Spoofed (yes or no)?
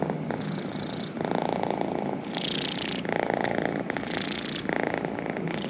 no